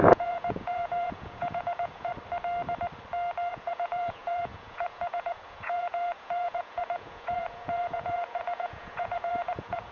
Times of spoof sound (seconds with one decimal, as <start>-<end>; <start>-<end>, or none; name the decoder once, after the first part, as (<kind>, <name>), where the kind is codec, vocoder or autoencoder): 0.0-2.1 (vocoder, Vocos); 3.5-9.9